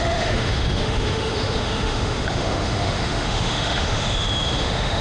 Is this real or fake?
fake